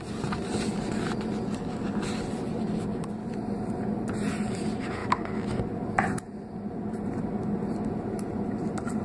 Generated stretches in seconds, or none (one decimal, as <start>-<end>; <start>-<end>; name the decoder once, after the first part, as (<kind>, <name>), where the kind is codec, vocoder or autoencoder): none